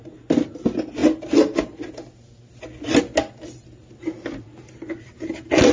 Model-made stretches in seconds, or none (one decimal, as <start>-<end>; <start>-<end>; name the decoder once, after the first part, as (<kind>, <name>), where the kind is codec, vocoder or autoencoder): none